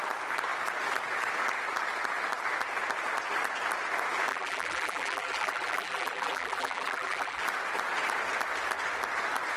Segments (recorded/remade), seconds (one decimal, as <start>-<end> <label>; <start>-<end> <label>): 0.0-4.3 recorded; 4.3-7.4 remade; 7.4-9.6 recorded